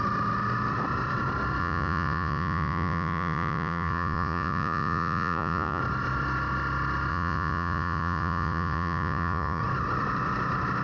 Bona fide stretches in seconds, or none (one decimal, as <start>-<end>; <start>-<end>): 0.0-1.6; 5.8-7.1; 9.6-10.8

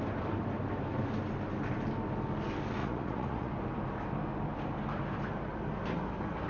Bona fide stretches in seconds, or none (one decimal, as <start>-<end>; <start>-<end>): 0.0-2.8; 3.5-6.5

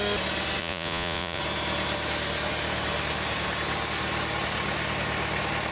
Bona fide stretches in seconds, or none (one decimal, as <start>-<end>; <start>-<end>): 0.0-0.6; 1.4-5.7

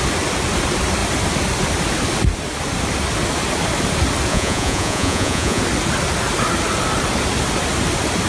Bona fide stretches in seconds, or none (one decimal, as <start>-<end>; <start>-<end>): 0.0-4.3; 5.6-8.3

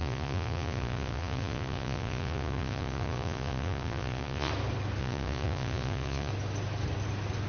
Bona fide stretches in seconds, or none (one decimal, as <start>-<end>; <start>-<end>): 4.5-5.0; 6.3-7.5

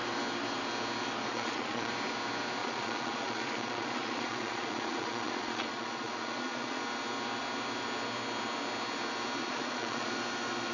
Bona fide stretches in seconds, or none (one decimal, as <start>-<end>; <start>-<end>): 0.0-1.3; 1.9-2.6; 6.8-9.4; 10.1-10.7

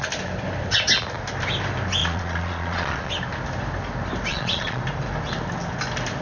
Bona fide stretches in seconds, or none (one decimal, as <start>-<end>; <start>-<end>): 0.0-2.0; 3.1-4.3; 4.8-6.2

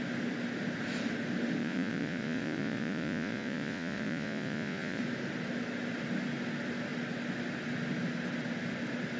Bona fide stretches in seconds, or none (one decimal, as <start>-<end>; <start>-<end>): 0.0-1.6; 5.0-9.2